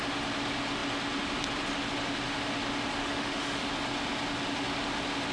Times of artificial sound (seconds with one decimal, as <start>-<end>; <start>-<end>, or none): 3.0-3.7